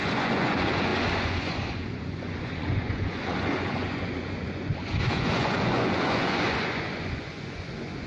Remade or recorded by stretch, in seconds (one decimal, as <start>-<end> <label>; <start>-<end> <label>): 0.0-8.1 remade